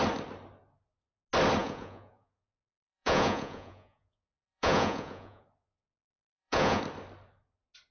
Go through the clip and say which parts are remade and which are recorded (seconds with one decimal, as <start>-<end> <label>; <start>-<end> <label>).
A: 0.0-1.6 recorded; 1.6-5.4 remade; 5.4-6.0 recorded; 6.0-6.8 remade; 6.8-7.9 recorded